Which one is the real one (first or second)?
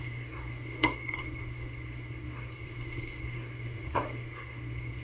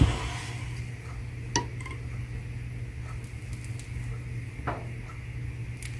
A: second